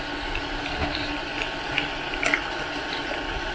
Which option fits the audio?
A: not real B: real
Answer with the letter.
B